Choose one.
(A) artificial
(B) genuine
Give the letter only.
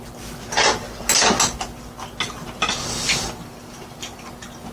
B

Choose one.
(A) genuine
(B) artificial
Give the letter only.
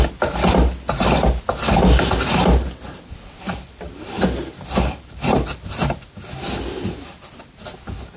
A